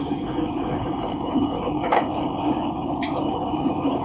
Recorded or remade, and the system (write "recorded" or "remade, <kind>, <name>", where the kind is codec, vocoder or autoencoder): remade, codec, DAC